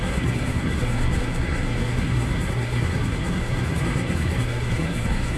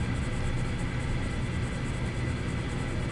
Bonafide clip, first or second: second